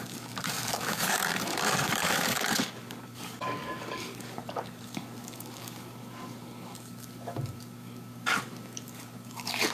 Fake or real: fake